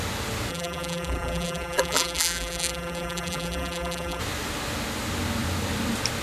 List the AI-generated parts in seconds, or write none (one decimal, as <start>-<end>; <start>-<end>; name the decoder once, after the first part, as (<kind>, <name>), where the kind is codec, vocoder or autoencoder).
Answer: 0.5-4.2 (vocoder, BigVGAN v2)